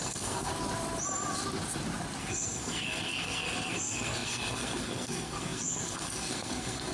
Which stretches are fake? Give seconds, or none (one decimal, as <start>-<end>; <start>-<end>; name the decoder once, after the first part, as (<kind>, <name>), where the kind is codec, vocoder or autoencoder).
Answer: 0.0-0.5 (codec, SNAC); 2.2-6.9